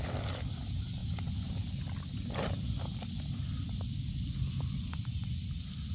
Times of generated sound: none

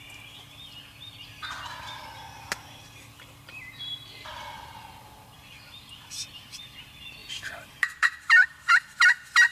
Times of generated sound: 7.2-8.7 (vocoder, BigVGAN v2)

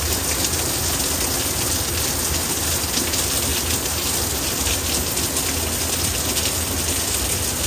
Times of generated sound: none